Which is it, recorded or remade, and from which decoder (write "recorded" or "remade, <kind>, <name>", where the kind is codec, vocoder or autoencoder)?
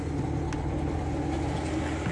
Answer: recorded